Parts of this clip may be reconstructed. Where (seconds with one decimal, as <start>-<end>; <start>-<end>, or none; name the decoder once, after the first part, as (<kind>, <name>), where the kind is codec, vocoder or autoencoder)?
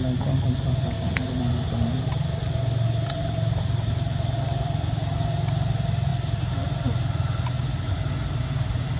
none